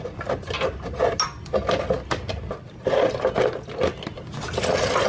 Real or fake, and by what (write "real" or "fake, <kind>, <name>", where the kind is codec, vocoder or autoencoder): real